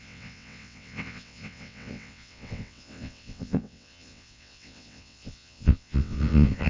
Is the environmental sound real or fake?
fake